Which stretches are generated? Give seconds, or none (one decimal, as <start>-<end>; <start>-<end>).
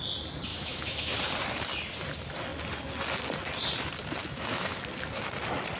0.5-1.2; 4.2-4.8